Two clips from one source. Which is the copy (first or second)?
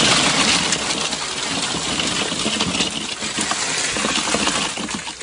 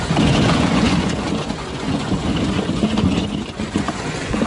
second